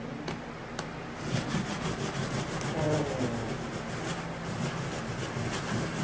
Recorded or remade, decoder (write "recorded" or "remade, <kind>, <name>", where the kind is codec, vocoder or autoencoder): recorded